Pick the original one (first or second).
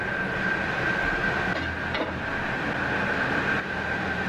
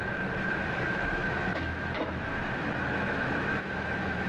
first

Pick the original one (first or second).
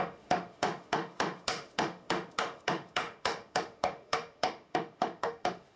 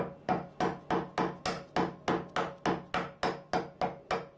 second